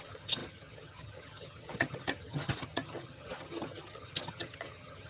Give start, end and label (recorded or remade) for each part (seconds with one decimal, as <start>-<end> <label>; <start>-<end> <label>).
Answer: 0.0-5.1 remade